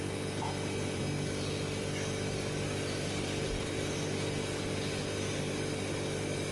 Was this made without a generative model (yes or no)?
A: yes